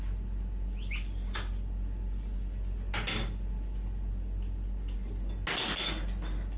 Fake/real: real